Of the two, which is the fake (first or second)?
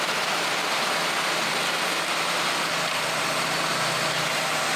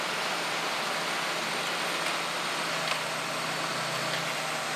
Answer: first